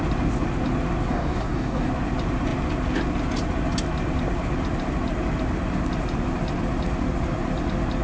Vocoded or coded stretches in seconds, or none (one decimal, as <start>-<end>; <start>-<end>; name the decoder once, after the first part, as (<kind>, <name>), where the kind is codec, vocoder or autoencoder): 1.1-1.9 (codec, DAC)